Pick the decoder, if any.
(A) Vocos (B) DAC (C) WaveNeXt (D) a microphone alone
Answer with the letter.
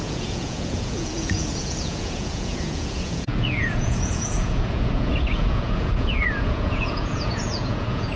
A